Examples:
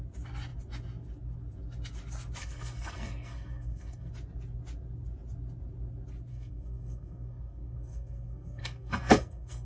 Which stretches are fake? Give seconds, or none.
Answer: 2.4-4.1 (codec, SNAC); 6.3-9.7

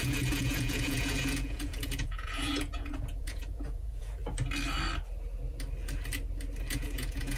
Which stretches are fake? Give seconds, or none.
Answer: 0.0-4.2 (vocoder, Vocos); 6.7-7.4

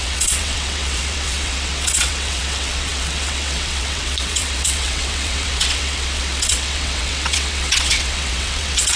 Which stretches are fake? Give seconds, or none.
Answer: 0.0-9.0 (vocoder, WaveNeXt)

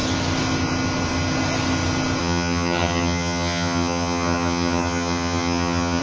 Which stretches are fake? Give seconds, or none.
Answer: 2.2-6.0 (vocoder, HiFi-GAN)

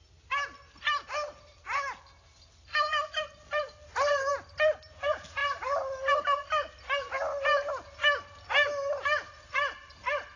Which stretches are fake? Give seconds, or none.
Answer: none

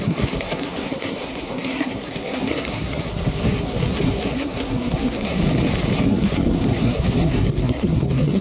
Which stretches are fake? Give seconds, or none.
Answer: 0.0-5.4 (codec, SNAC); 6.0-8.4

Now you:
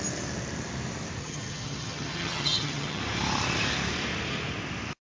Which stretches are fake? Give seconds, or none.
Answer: 1.2-3.0 (vocoder, HiFi-GAN)